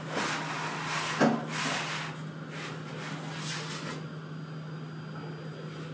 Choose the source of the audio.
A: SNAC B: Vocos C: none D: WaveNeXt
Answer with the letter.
C